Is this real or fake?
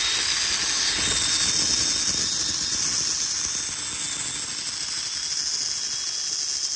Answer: real